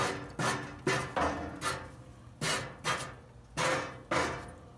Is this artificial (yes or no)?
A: no